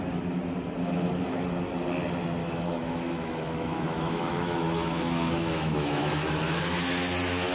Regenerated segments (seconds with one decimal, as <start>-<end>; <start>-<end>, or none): 2.4-6.6